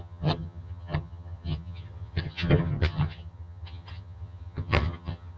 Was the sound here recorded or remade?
remade